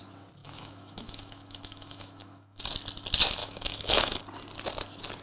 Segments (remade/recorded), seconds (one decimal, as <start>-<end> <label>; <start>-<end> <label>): 0.0-0.4 recorded; 0.4-2.6 remade; 2.6-3.4 recorded; 3.4-4.2 remade; 4.2-5.2 recorded